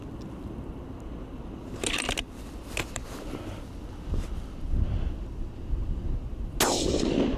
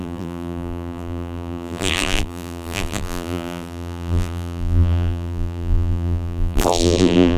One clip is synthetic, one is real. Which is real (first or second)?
first